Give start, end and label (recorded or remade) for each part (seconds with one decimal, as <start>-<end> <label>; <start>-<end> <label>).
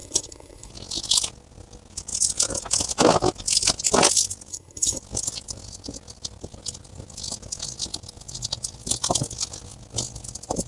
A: 0.0-0.7 remade; 0.7-4.5 recorded; 4.5-5.0 remade; 5.0-10.7 recorded